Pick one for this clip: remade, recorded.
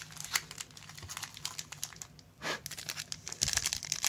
recorded